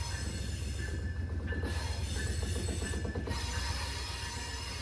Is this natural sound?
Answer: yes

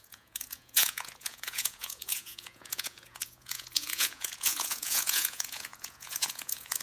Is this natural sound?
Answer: no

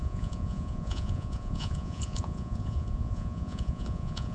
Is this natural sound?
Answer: no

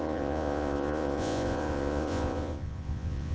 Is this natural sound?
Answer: no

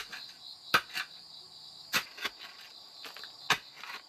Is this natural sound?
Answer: yes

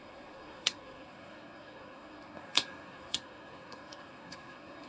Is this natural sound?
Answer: no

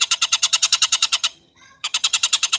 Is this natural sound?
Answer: no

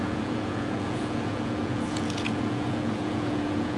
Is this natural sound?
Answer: no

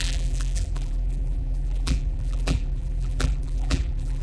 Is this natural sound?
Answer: no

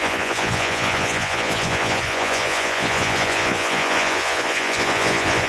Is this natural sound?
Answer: no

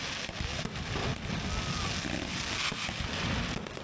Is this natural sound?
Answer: yes